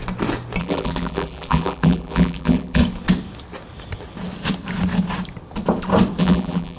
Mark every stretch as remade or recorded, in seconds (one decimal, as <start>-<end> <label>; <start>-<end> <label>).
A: 0.0-0.6 recorded; 0.6-2.8 remade; 2.8-6.2 recorded; 6.2-6.8 remade